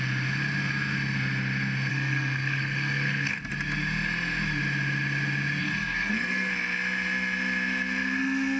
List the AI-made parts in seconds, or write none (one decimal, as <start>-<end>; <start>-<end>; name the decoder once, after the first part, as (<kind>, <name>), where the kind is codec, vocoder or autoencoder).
1.9-3.5 (codec, SNAC); 5.6-6.5

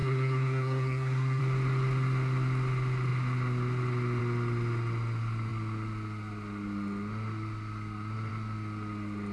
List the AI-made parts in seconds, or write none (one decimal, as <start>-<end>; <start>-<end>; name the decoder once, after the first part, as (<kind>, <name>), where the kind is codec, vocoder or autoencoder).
0.0-1.4 (codec, SNAC)